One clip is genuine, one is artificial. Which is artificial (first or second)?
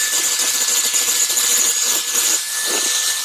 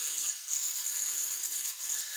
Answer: second